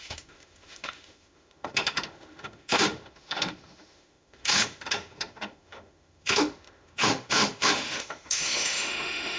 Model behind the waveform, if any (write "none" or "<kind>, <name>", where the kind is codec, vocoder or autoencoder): autoencoder, DAC-VAE